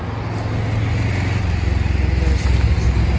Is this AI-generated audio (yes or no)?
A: no